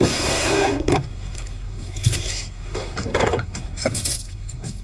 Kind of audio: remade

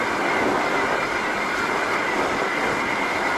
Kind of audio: remade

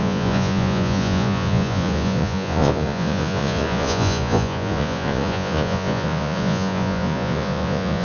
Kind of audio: remade